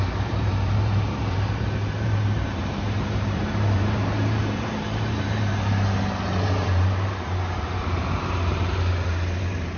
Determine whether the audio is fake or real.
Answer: fake